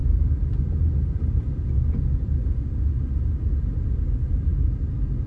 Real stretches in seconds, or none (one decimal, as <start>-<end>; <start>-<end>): 0.0-5.3